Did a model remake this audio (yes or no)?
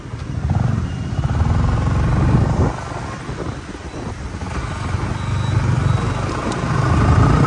no